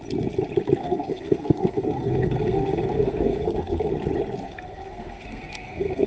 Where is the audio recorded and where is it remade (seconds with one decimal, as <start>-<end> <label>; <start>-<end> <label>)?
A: 0.0-0.8 recorded; 0.8-3.9 remade; 3.9-4.4 recorded; 4.4-6.1 remade